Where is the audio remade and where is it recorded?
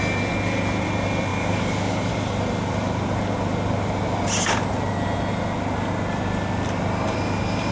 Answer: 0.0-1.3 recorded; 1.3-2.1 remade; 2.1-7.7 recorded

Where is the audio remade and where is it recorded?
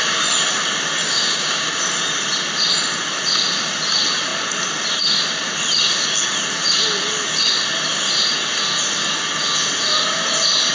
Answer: 0.0-1.0 recorded; 1.0-1.7 remade; 1.7-10.7 recorded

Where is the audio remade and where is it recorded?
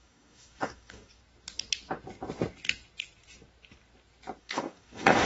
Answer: 0.0-1.2 remade; 1.2-4.4 recorded; 4.4-5.3 remade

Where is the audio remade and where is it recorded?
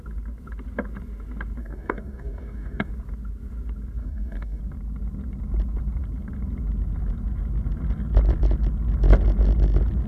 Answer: 0.0-1.6 recorded; 1.6-2.9 remade; 2.9-4.0 recorded; 4.0-4.6 remade; 4.6-10.1 recorded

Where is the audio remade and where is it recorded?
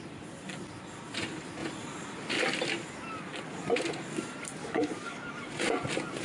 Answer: 0.0-4.6 recorded; 4.6-5.3 remade; 5.3-6.2 recorded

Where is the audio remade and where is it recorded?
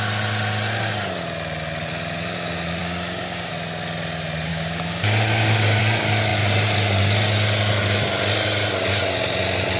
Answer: 0.0-2.8 recorded; 2.8-3.5 remade; 3.5-4.5 recorded; 4.5-5.8 remade; 5.8-9.8 recorded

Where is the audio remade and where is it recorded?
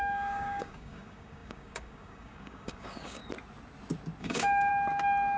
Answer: 0.0-3.2 remade; 3.2-4.2 recorded; 4.2-4.7 remade; 4.7-5.4 recorded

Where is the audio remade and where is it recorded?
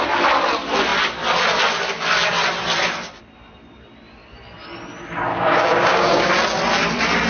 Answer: 0.0-5.3 recorded; 5.3-6.3 remade; 6.3-7.3 recorded